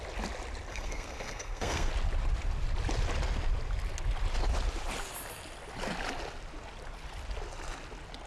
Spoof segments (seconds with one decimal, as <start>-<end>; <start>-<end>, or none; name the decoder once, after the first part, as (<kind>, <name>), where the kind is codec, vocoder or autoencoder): 0.7-1.9 (codec, SNAC)